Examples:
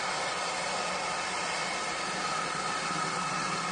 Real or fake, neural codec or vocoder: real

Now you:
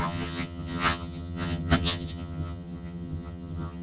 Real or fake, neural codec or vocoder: fake, vocoder, HiFi-GAN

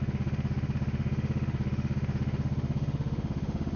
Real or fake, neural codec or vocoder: fake, autoencoder, DAC-VAE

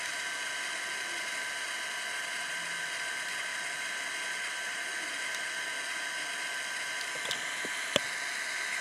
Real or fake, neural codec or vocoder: real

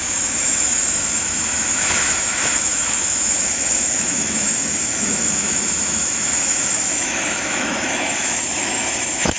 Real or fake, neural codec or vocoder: fake, autoencoder, DAC-VAE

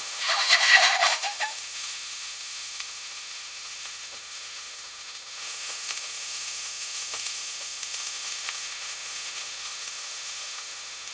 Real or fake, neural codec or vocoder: fake, autoencoder, DAC-VAE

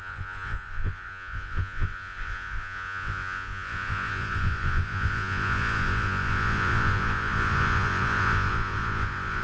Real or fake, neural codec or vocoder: fake, vocoder, Vocos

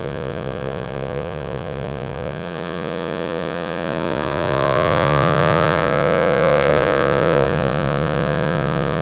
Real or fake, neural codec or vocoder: fake, vocoder, Vocos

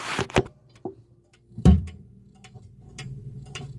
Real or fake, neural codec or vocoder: fake, vocoder, BigVGAN v2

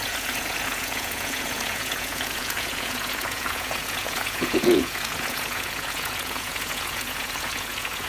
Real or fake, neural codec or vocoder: fake, vocoder, Vocos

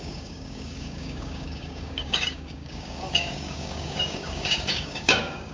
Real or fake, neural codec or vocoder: fake, codec, DAC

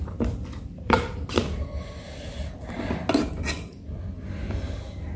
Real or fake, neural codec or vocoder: real